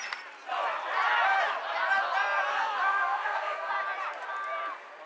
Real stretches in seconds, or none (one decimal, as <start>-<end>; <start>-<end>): 0.0-2.5; 3.7-5.1